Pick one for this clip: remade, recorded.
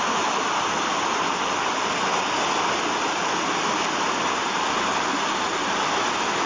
recorded